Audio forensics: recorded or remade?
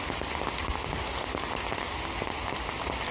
recorded